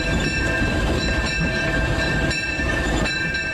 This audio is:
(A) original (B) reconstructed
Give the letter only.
B